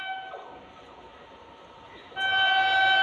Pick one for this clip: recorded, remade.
recorded